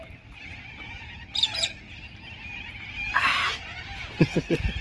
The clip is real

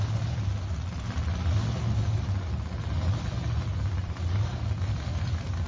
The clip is fake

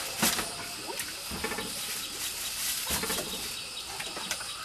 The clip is real